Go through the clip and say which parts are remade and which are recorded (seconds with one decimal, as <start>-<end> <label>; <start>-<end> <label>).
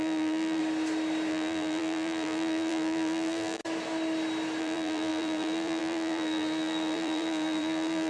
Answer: 0.0-0.6 remade; 0.6-1.3 recorded; 1.3-3.6 remade; 3.6-4.6 recorded; 4.6-8.1 remade